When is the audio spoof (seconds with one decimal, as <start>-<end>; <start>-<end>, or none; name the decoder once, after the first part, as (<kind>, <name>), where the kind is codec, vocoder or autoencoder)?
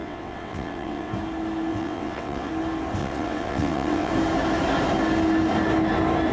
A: 0.0-1.1 (vocoder, WaveNeXt); 1.7-2.5; 3.0-4.1